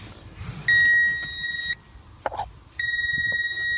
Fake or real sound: real